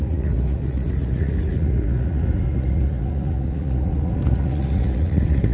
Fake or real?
fake